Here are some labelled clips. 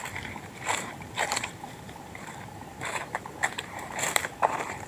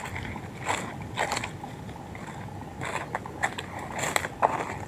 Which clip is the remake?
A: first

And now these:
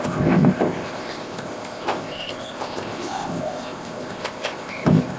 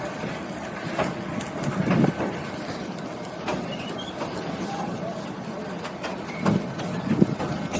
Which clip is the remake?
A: first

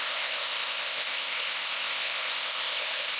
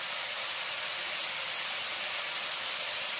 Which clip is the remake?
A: first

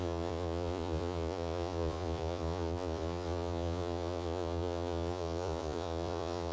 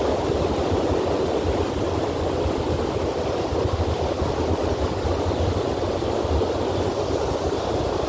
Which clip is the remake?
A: first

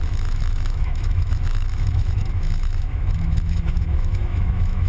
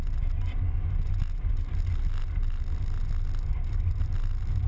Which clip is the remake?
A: first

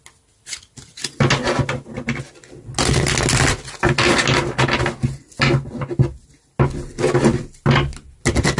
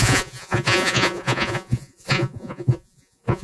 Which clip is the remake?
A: second